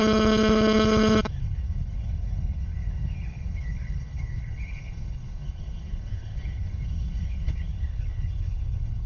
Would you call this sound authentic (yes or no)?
no